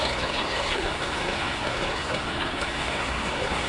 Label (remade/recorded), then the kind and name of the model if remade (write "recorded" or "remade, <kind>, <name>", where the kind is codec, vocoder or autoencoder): remade, codec, SNAC